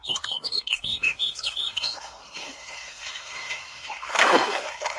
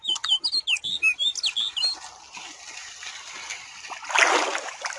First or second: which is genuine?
second